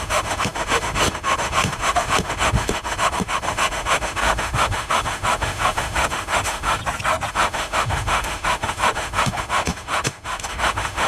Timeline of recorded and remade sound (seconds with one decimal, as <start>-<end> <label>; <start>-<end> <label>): 0.0-6.8 remade; 6.8-7.3 recorded; 7.3-11.1 remade